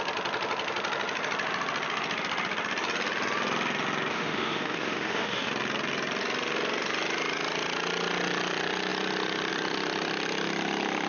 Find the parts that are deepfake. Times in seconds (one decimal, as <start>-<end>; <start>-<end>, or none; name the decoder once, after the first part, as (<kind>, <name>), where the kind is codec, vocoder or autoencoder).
4.1-5.5 (autoencoder, DAC-VAE)